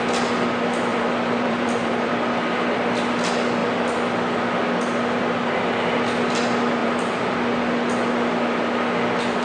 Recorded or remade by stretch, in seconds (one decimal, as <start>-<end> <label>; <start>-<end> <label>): 0.0-0.9 recorded; 0.9-2.1 remade; 2.1-6.8 recorded; 6.8-7.3 remade; 7.3-9.4 recorded